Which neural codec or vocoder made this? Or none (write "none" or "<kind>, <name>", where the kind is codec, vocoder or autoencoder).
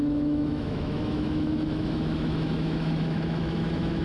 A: autoencoder, DAC-VAE